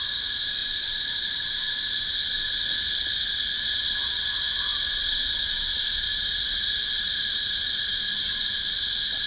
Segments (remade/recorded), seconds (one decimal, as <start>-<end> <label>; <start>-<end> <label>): 0.0-0.6 recorded; 0.6-2.1 remade; 2.1-4.7 recorded; 4.7-8.7 remade; 8.7-9.3 recorded

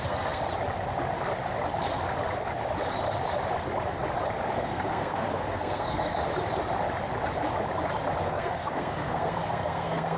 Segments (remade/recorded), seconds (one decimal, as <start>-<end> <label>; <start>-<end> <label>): 0.0-0.4 remade; 0.4-4.5 recorded; 4.5-6.2 remade; 6.2-8.2 recorded; 8.2-10.2 remade

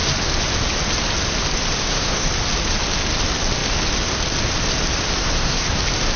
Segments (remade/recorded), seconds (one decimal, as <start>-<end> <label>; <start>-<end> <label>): 0.0-1.8 recorded; 1.8-2.3 remade; 2.3-5.2 recorded; 5.2-5.8 remade; 5.8-6.2 recorded

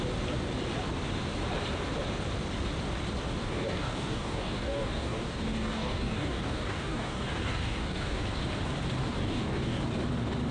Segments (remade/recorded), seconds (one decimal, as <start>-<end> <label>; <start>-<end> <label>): 0.0-3.4 recorded; 3.4-8.2 remade; 8.2-9.2 recorded; 9.2-9.8 remade; 9.8-10.5 recorded